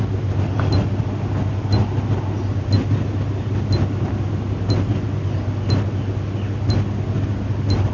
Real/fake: real